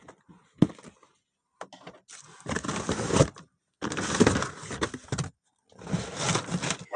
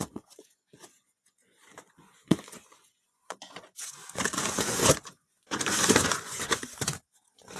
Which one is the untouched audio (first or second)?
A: first